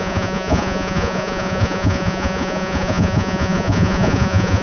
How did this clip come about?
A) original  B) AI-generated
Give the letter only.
B